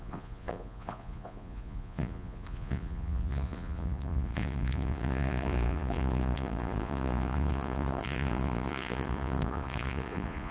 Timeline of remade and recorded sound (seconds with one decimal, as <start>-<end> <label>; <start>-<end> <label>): 0.0-10.5 remade